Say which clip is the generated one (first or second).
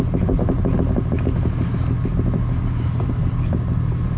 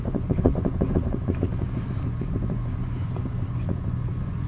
second